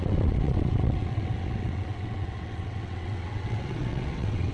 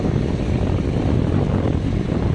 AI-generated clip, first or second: first